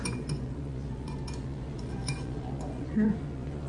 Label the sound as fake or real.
fake